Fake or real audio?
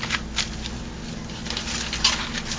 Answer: real